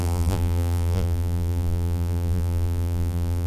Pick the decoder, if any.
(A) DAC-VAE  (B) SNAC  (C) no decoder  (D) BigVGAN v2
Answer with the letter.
D